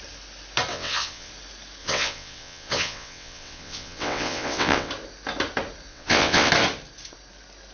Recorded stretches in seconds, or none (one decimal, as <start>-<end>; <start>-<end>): 0.0-0.7; 1.3-1.8; 4.9-5.9; 6.5-7.7